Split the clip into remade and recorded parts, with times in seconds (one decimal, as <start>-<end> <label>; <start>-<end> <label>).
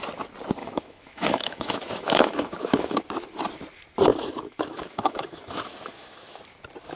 0.0-0.6 recorded; 0.6-3.0 remade; 3.0-4.1 recorded; 4.1-6.4 remade; 6.4-7.0 recorded